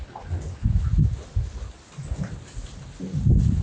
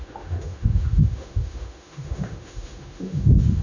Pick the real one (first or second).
first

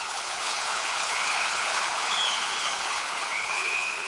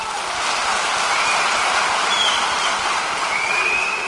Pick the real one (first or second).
second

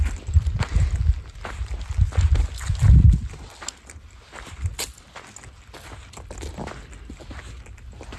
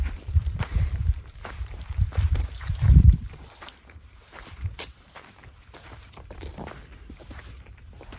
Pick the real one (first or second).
first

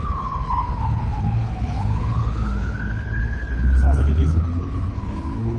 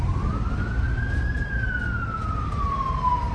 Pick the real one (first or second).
second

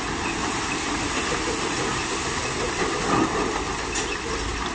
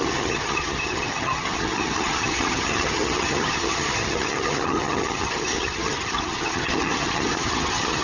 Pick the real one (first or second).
first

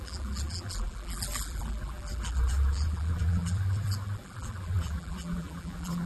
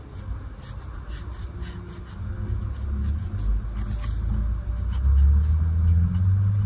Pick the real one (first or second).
second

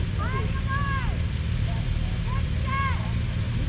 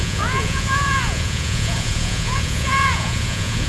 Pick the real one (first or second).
first